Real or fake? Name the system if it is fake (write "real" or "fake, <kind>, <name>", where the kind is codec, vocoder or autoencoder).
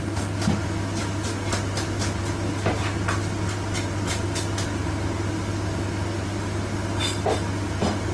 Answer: real